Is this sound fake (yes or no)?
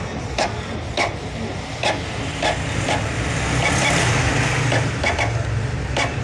no